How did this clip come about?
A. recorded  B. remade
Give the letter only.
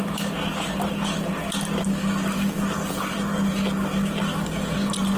A